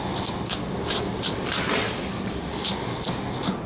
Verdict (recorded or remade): recorded